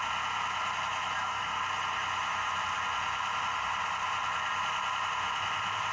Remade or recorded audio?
recorded